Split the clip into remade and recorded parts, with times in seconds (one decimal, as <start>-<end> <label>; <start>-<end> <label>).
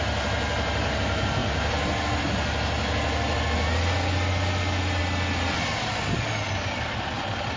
0.0-7.6 recorded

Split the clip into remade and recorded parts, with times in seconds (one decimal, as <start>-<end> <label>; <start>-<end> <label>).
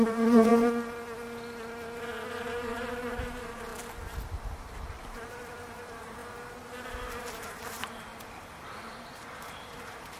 0.0-0.5 remade; 0.5-2.3 recorded; 2.3-3.7 remade; 3.7-4.4 recorded; 4.4-6.2 remade; 6.2-7.2 recorded; 7.2-8.1 remade; 8.1-8.9 recorded; 8.9-10.2 remade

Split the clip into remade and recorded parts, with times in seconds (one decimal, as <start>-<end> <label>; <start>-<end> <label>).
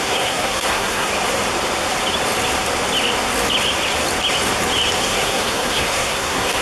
0.0-1.1 remade; 1.1-5.0 recorded; 5.0-6.6 remade